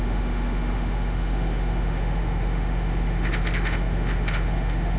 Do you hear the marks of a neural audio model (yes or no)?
yes